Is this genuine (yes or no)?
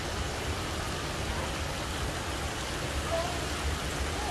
yes